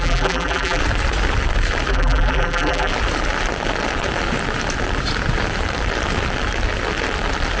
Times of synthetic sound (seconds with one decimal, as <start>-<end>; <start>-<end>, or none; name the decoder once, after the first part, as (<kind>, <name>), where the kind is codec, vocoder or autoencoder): 0.0-0.8 (vocoder, BigVGAN v2); 1.9-2.9